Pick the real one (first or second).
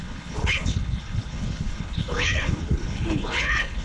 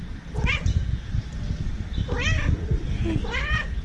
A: second